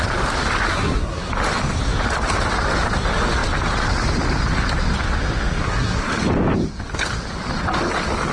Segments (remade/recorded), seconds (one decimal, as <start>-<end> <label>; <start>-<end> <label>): 0.0-0.7 recorded; 0.7-1.3 remade; 1.3-5.6 recorded; 5.6-6.1 remade; 6.1-8.3 recorded